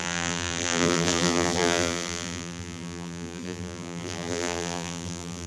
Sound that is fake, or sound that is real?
fake